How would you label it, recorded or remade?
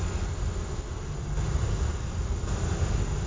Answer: recorded